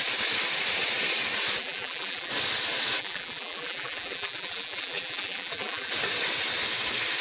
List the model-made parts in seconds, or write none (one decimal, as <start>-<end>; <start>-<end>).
1.6-2.3; 3.0-5.9